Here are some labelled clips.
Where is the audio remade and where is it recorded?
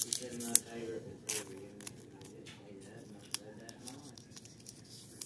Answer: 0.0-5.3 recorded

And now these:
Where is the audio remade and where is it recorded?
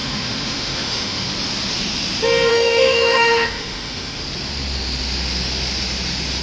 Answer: 0.0-1.3 remade; 1.3-2.5 recorded; 2.5-4.2 remade; 4.2-6.4 recorded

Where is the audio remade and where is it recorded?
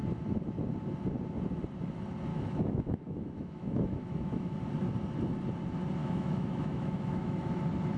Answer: 0.0-2.3 recorded; 2.3-4.6 remade; 4.6-6.0 recorded; 6.0-7.5 remade; 7.5-8.0 recorded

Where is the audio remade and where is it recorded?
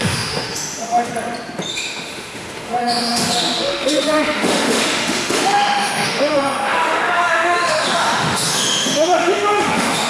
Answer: 0.0-1.1 remade; 1.1-1.7 recorded; 1.7-10.1 remade